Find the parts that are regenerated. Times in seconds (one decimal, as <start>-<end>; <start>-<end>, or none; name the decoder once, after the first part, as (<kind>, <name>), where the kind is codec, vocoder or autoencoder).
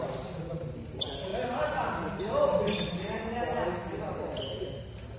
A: none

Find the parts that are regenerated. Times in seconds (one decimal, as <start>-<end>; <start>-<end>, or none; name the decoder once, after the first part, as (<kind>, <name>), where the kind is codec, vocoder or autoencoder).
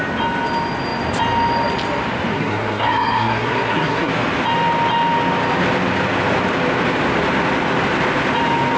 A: 2.3-4.1 (codec, SNAC)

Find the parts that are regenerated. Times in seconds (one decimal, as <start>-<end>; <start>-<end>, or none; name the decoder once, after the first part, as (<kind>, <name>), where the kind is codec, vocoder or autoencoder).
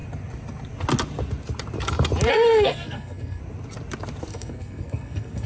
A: 2.3-3.4 (codec, SNAC); 4.3-5.5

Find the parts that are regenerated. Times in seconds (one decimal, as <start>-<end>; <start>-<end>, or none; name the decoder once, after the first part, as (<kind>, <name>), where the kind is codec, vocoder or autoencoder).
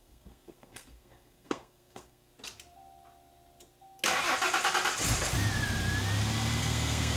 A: 0.0-2.3 (codec, SNAC); 6.6-7.2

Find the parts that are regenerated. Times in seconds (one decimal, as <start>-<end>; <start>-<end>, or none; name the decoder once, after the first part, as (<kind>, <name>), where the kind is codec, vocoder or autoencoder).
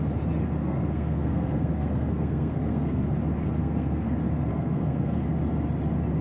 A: 0.6-3.0 (codec, SNAC); 3.6-4.1; 4.5-5.3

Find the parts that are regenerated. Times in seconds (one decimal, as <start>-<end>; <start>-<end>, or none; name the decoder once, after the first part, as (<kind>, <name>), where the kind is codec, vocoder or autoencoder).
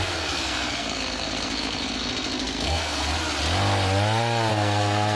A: 0.0-3.1 (codec, SNAC); 4.5-5.1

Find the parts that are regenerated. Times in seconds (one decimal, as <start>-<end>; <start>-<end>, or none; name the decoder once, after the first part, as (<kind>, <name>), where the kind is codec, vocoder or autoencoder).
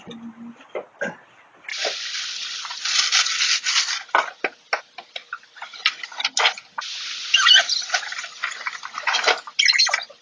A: none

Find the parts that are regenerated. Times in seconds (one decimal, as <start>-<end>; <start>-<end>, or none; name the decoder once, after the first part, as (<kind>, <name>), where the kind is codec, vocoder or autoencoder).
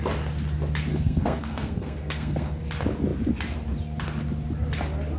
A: 0.9-2.6 (codec, SNAC)